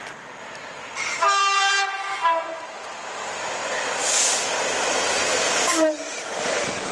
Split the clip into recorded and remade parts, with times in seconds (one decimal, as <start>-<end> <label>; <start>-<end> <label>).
0.0-3.6 remade; 3.6-5.3 recorded; 5.3-6.9 remade